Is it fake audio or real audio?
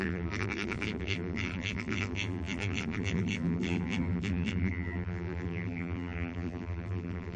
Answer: fake